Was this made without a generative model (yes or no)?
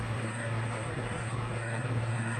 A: no